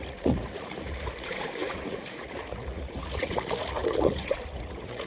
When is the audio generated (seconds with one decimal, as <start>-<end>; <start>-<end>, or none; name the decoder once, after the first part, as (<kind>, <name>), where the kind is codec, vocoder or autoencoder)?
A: 0.0-5.1 (vocoder, Vocos)